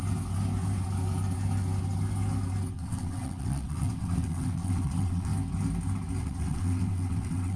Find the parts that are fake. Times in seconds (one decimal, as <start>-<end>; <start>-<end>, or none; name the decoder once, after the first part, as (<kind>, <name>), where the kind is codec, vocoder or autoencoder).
2.7-5.3 (vocoder, WaveNeXt); 6.2-7.6